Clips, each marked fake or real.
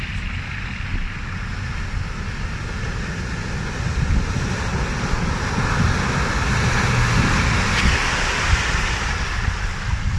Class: real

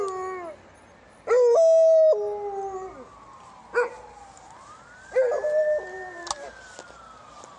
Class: real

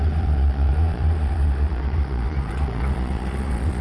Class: fake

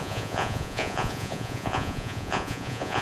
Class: fake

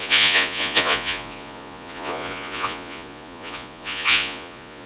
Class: fake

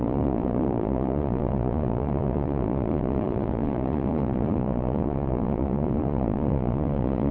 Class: fake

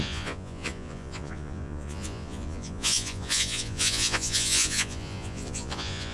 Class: fake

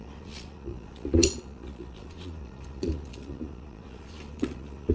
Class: fake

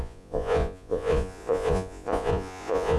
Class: fake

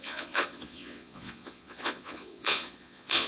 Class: fake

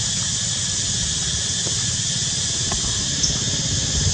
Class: real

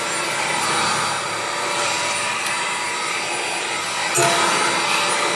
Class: real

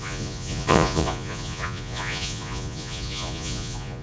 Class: fake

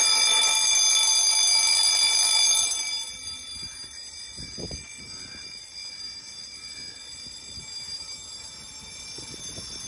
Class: real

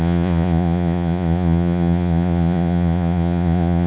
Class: fake